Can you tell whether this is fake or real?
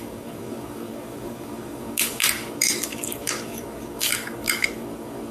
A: fake